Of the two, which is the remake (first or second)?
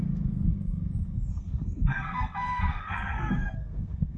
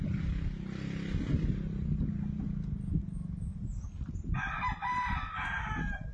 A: first